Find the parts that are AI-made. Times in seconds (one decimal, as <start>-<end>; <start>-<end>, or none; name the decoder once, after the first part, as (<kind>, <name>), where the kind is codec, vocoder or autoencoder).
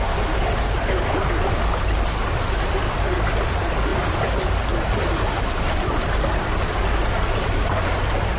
none